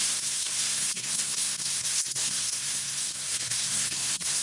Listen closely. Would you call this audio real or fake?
fake